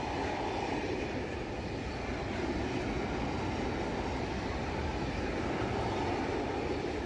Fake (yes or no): no